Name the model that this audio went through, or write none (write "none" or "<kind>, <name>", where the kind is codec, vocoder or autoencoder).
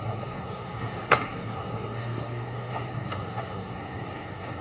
codec, SNAC